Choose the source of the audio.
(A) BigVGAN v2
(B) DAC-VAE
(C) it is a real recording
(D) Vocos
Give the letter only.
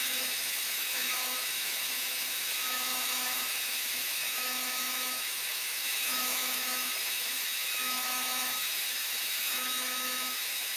B